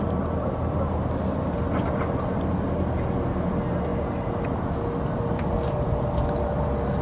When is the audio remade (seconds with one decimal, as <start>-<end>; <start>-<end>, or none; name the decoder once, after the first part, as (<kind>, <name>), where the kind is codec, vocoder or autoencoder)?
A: none